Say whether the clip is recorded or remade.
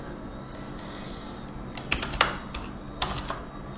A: recorded